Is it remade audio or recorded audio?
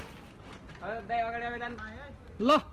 recorded